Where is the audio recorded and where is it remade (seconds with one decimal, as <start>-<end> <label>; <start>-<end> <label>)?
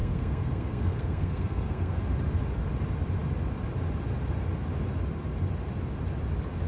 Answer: 0.0-2.0 remade; 2.0-6.7 recorded